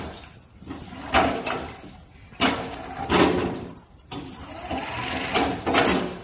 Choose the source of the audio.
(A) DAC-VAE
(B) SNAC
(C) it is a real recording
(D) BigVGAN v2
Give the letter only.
C